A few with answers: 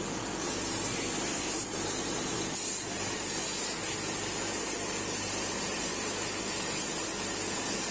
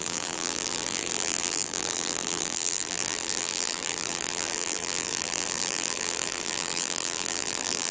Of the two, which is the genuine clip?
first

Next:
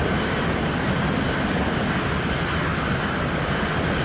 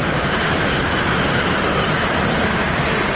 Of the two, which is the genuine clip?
first